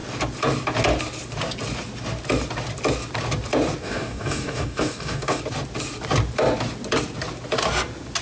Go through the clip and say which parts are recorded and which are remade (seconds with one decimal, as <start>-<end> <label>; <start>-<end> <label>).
0.0-3.8 recorded; 3.8-5.4 remade; 5.4-8.2 recorded